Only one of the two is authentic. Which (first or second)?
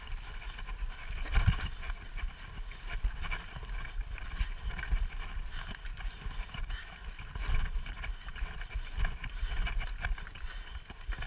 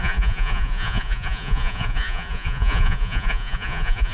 first